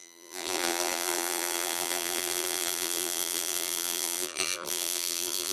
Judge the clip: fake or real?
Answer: fake